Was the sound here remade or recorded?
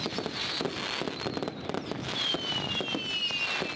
recorded